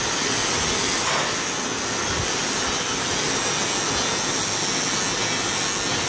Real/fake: real